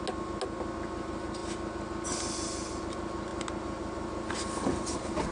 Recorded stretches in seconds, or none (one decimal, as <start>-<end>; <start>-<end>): 0.0-5.3